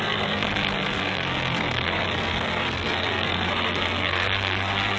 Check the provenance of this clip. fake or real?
fake